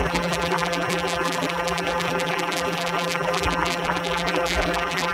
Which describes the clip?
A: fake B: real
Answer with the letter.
A